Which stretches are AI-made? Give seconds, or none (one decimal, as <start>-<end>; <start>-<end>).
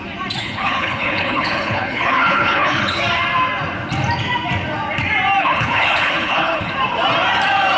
0.4-3.0; 5.4-6.7